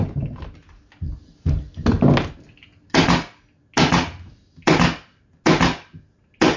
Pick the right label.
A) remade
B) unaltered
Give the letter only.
B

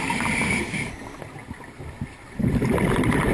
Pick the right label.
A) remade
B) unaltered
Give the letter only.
B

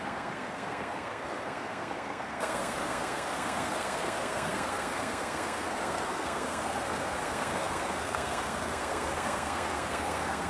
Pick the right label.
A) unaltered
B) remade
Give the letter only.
B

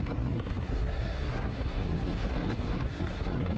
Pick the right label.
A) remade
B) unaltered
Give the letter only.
A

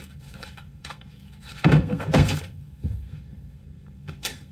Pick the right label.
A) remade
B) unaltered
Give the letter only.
A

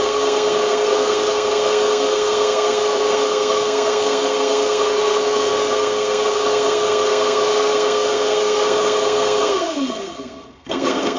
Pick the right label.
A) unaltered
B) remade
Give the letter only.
B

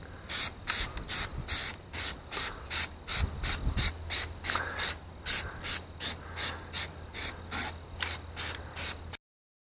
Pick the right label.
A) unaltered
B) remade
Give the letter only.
A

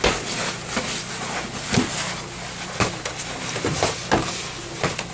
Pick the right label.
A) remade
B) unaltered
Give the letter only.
B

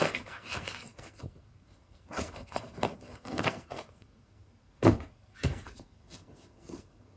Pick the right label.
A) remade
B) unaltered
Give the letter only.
A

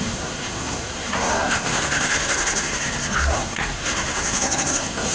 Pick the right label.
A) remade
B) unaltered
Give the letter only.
A